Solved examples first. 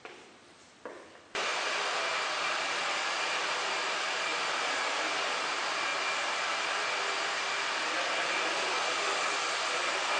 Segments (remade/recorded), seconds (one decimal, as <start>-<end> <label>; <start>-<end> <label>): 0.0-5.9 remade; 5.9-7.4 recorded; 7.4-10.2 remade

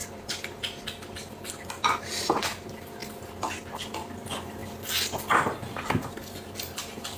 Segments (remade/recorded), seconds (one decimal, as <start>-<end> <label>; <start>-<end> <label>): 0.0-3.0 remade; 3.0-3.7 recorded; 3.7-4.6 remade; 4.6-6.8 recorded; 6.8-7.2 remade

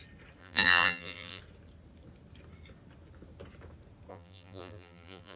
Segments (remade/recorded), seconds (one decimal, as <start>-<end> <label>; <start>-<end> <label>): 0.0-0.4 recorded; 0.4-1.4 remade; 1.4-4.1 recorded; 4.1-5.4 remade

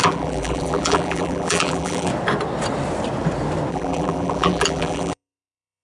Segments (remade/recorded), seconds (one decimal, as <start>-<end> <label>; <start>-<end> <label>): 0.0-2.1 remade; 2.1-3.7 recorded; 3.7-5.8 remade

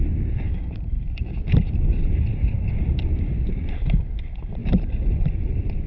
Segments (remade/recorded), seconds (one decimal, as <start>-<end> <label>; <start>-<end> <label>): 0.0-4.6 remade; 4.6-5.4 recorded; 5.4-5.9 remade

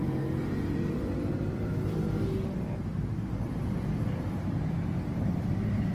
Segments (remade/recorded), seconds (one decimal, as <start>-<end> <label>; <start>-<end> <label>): 0.0-1.7 remade; 1.7-4.1 recorded; 4.1-5.9 remade